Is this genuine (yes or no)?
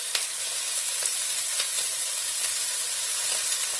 yes